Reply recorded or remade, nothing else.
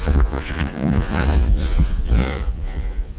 remade